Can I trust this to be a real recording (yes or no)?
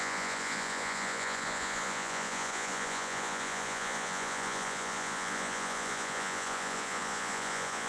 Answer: no